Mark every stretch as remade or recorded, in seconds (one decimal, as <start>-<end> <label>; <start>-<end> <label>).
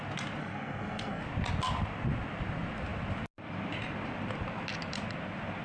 0.0-0.4 recorded; 0.4-1.2 remade; 1.2-5.6 recorded